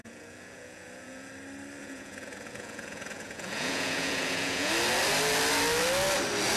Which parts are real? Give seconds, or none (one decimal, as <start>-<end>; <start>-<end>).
1.3-1.8; 4.7-6.6